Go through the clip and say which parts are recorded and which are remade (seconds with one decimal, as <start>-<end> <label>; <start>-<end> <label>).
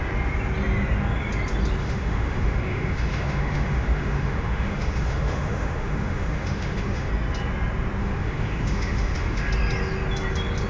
0.0-1.8 recorded; 1.8-7.1 remade; 7.1-8.0 recorded; 8.0-9.5 remade; 9.5-10.7 recorded